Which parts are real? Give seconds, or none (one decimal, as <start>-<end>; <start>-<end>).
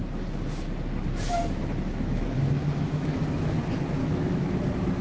0.0-1.0; 3.6-4.0; 4.5-5.0